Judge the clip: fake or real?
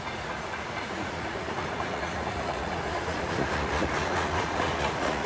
fake